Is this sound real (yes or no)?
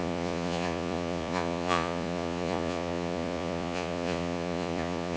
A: no